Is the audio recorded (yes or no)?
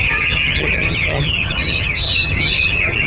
no